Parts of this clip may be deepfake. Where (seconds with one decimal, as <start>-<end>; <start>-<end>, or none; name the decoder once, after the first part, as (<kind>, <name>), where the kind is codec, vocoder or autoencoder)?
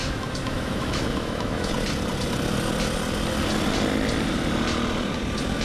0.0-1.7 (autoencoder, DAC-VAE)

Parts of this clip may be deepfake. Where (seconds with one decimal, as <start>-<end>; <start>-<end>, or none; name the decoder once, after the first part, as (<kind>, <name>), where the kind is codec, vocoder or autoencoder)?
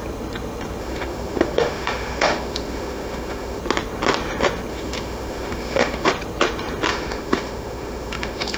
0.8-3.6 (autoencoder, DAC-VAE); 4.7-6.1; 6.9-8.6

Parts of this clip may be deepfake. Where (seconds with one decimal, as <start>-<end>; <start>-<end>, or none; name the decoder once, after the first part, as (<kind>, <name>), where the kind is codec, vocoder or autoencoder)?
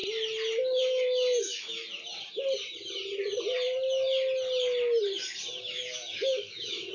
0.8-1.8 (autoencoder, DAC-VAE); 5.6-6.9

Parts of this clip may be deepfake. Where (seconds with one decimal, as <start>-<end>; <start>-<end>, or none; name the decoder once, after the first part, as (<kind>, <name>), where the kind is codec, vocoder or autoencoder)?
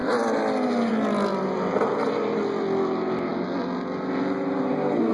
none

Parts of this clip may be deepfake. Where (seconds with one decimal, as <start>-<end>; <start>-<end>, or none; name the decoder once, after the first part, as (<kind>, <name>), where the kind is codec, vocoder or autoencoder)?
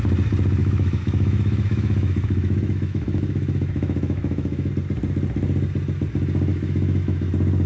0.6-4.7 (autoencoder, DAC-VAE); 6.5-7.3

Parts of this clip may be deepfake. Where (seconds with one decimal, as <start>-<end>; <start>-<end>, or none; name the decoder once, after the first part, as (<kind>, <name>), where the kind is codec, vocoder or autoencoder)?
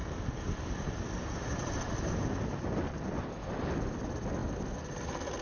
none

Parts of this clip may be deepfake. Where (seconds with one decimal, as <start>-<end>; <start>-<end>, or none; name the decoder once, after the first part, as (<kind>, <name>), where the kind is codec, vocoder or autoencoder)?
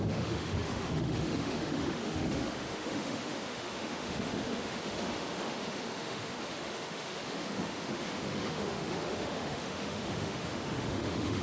0.0-11.4 (autoencoder, DAC-VAE)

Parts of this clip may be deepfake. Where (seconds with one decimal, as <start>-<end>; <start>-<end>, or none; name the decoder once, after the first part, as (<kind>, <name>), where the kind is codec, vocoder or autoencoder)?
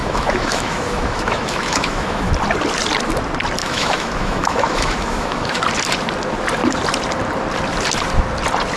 0.0-2.3 (autoencoder, DAC-VAE); 3.6-5.6